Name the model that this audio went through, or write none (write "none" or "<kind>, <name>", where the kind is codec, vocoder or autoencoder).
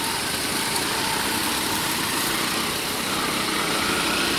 none